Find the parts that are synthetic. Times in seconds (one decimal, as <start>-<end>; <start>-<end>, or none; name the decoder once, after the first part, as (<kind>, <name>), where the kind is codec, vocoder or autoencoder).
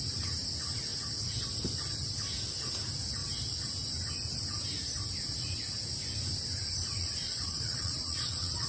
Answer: 7.0-8.7 (vocoder, Vocos)